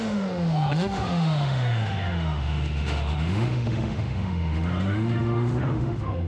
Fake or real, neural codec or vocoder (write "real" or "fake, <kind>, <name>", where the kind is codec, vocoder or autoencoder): fake, autoencoder, DAC-VAE